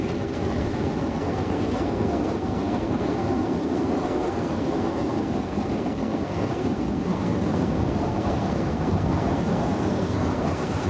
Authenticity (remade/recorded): remade